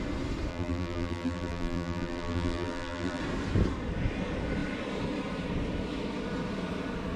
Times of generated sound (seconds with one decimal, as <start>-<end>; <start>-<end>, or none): 0.5-3.2